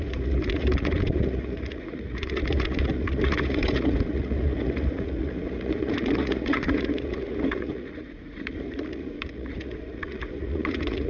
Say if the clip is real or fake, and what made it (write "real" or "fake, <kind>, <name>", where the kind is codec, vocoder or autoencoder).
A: fake, vocoder, Vocos